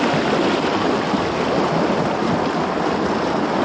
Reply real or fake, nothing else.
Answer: real